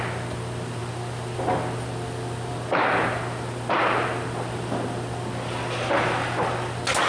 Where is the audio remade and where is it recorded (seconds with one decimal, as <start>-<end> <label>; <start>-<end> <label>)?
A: 0.0-7.1 recorded

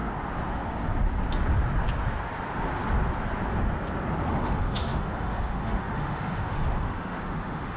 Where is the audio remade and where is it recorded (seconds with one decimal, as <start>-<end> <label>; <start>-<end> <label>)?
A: 0.0-4.3 recorded; 4.3-7.8 remade

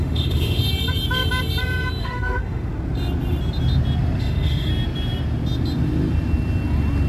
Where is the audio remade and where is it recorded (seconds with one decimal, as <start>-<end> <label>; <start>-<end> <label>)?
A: 0.0-0.6 remade; 0.6-2.0 recorded; 2.0-2.7 remade; 2.7-4.2 recorded; 4.2-4.7 remade; 4.7-7.1 recorded

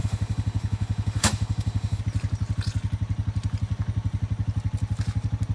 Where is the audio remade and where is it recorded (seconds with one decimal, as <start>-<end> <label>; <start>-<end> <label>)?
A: 0.0-2.0 remade; 2.0-5.5 recorded

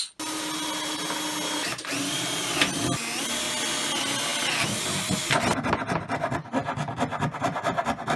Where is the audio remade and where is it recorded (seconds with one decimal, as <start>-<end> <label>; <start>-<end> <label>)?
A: 0.0-8.2 recorded